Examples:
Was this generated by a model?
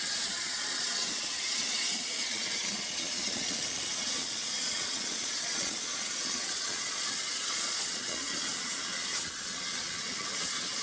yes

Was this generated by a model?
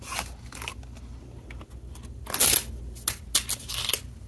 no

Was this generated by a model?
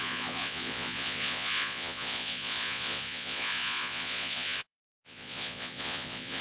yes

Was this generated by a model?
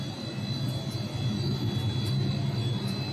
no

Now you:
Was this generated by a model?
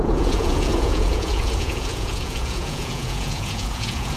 yes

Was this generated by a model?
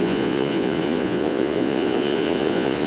yes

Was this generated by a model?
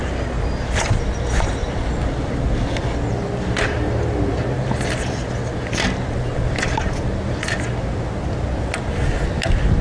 no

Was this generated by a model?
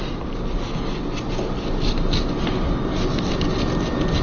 no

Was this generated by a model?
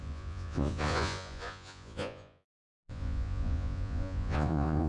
yes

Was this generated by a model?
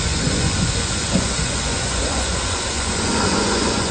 yes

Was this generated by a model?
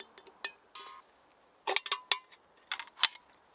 no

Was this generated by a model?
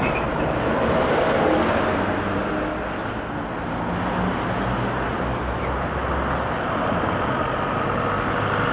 no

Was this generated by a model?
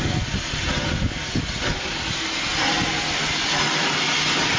no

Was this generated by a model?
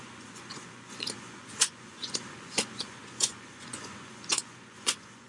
yes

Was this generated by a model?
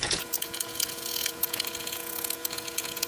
yes